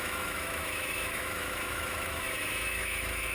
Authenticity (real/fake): fake